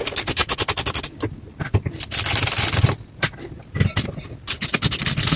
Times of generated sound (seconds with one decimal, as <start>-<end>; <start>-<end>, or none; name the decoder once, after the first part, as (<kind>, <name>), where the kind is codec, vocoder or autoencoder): 0.4-3.6 (vocoder, BigVGAN v2)